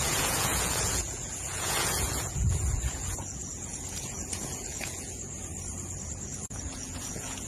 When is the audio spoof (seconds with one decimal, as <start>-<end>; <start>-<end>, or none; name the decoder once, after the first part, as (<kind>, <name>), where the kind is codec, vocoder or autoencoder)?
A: 0.0-5.5 (vocoder, Vocos); 6.1-7.5